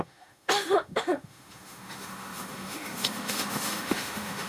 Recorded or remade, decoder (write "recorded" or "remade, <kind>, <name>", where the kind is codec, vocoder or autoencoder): remade, autoencoder, DAC-VAE